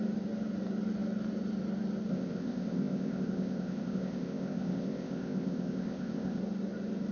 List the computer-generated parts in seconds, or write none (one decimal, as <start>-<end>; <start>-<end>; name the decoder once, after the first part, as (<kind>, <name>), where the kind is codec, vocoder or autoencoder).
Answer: 2.1-6.4 (codec, ZipCodec)

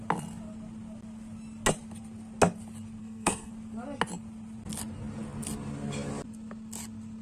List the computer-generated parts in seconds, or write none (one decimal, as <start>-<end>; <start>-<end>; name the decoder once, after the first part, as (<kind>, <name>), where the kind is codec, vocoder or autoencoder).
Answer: 3.0-3.5 (codec, SNAC)

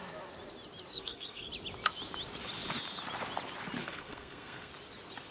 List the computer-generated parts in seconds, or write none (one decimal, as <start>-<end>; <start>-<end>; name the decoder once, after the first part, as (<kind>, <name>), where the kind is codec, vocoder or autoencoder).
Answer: 0.9-1.5 (codec, SNAC); 3.8-4.7

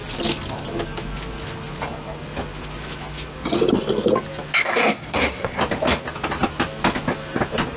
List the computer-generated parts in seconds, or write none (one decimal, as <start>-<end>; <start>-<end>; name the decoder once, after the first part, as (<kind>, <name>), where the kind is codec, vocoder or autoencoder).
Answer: 4.6-5.6 (codec, SNAC)

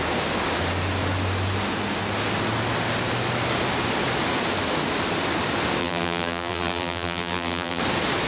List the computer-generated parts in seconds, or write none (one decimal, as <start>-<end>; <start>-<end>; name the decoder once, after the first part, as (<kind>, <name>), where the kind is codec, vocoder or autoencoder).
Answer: 5.8-7.8 (vocoder, BigVGAN v2)

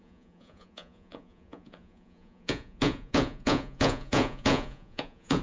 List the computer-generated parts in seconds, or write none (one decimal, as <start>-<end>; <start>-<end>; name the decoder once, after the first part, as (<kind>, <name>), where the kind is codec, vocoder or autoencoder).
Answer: 0.0-5.4 (vocoder, Vocos)

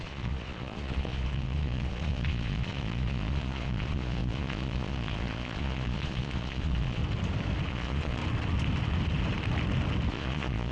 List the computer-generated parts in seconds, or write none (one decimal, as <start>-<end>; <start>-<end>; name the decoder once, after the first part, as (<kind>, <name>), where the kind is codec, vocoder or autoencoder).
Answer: 0.0-7.0 (vocoder, Vocos); 7.7-8.2; 10.1-10.7

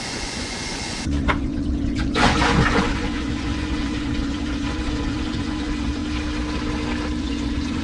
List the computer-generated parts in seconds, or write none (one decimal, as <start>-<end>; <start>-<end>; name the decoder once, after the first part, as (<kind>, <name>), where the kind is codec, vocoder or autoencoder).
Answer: 0.0-6.0 (vocoder, Vocos); 7.2-7.8